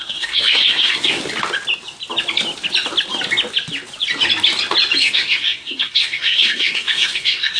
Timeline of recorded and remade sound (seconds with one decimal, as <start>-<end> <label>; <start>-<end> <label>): 0.0-1.2 remade; 1.2-5.0 recorded; 5.0-7.6 remade